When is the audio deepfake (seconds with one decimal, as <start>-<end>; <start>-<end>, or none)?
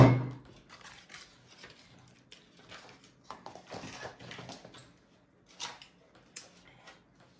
none